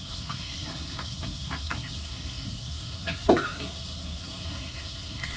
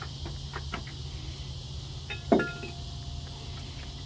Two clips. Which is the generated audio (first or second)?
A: first